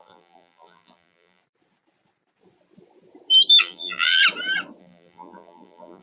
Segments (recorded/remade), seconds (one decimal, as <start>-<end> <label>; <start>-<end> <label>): 0.0-1.4 remade; 1.4-3.6 recorded; 3.6-4.2 remade; 4.2-4.8 recorded; 4.8-6.0 remade

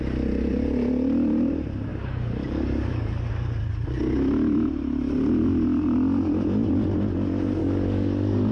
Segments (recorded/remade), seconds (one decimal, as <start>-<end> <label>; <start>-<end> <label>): 0.0-1.9 recorded; 1.9-3.3 remade; 3.3-7.6 recorded; 7.6-8.5 remade

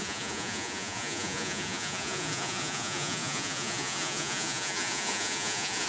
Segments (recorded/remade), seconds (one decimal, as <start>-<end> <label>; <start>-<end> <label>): 0.0-5.9 remade

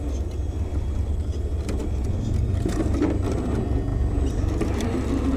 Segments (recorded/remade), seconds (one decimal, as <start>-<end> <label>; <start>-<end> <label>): 0.0-5.4 recorded

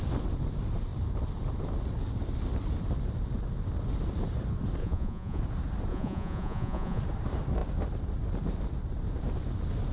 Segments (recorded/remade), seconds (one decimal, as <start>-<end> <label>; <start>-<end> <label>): 0.0-4.8 recorded; 4.8-5.4 remade; 5.4-5.9 recorded; 5.9-7.0 remade; 7.0-9.9 recorded

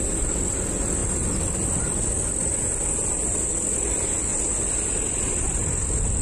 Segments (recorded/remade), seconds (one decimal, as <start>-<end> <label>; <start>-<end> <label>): 0.0-6.2 recorded

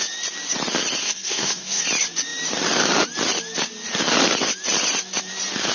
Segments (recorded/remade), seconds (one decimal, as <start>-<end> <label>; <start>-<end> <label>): 0.0-1.0 recorded; 1.0-1.8 remade; 1.8-5.7 recorded